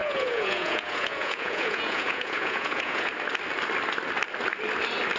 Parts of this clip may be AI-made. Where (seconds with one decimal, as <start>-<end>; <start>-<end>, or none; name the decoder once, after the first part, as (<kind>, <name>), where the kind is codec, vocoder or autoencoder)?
0.0-3.1 (vocoder, Vocos)